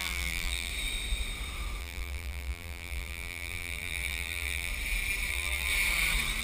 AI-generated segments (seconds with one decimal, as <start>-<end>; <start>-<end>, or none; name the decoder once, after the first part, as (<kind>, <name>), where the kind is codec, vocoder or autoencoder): 0.0-0.7 (vocoder, BigVGAN v2); 1.8-4.7; 5.3-5.7